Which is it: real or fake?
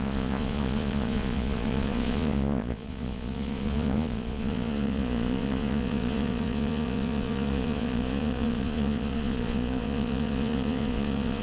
fake